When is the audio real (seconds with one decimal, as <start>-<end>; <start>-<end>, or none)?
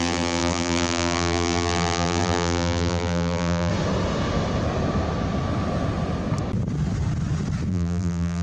3.7-7.7